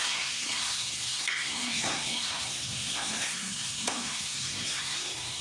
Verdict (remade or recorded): remade